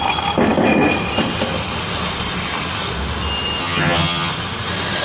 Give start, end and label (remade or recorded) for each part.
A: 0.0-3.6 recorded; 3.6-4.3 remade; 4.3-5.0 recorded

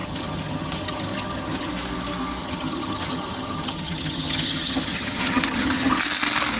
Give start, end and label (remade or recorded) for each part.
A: 0.0-1.7 remade; 1.7-2.4 recorded; 2.4-6.0 remade; 6.0-6.6 recorded

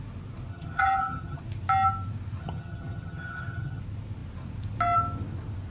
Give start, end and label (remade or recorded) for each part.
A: 0.0-0.5 recorded; 0.5-1.4 remade; 1.4-2.4 recorded; 2.4-3.8 remade; 3.8-5.7 recorded

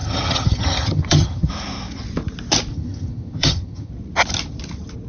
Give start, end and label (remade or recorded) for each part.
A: 0.0-1.5 remade; 1.5-2.7 recorded; 2.7-3.9 remade; 3.9-5.1 recorded

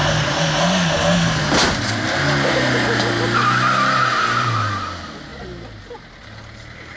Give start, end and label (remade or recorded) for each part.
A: 0.0-7.0 recorded

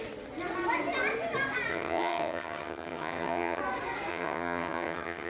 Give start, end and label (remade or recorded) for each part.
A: 0.0-1.7 recorded; 1.7-3.6 remade; 3.6-4.1 recorded; 4.1-5.3 remade